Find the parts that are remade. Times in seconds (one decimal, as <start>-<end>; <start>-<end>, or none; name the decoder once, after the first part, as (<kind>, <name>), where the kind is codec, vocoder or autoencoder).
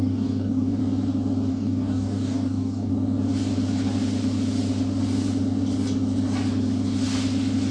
0.0-0.8 (codec, DAC); 1.5-2.9